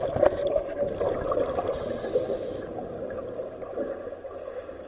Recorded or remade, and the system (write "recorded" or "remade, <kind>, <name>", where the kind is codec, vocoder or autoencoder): recorded